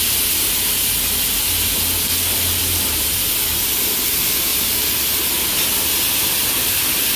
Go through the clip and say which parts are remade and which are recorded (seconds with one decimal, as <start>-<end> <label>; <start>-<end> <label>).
0.0-7.2 recorded